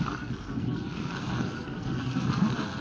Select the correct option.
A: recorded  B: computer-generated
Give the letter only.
B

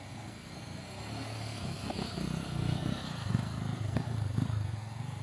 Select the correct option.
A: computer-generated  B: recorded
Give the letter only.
A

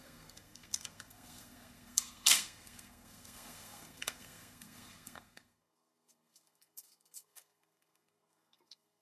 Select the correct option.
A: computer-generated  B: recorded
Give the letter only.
A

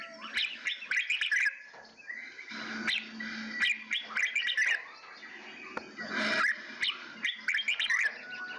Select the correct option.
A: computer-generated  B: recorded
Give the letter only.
B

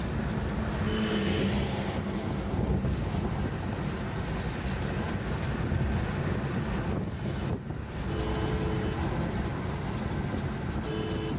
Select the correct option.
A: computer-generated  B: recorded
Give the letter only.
B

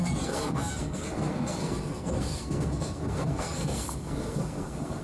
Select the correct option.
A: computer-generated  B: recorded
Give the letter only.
A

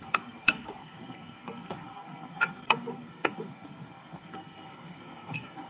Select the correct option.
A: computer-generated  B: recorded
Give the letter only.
A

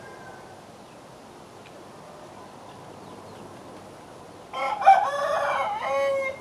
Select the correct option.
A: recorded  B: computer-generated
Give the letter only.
A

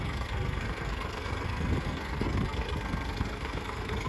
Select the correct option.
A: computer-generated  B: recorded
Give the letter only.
A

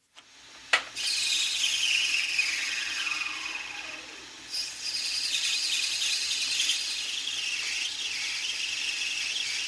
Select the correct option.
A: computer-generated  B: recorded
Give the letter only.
B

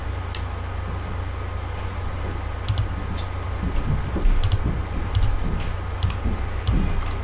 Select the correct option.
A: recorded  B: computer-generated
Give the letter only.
A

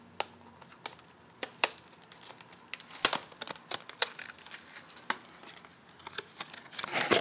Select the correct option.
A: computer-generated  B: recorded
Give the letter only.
B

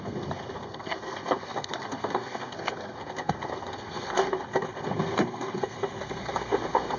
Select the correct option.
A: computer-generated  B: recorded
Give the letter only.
A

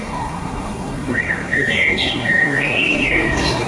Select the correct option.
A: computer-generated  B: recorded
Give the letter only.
A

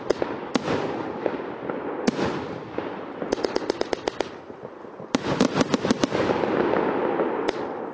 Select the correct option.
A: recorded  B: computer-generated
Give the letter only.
A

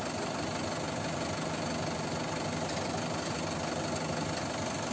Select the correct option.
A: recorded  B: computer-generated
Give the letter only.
A